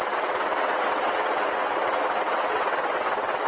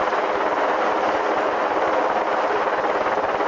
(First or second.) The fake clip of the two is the first